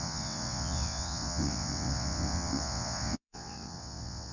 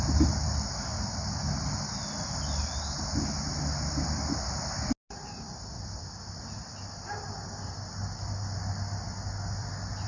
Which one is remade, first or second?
first